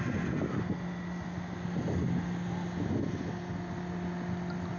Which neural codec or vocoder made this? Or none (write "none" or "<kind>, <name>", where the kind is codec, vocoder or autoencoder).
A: none